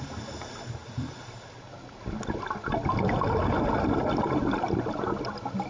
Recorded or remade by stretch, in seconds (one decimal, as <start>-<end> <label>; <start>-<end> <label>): 0.0-5.7 recorded